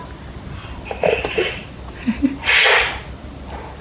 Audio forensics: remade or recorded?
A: recorded